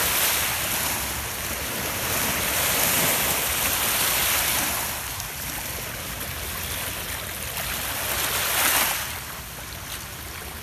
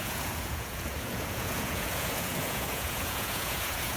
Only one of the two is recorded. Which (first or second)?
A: first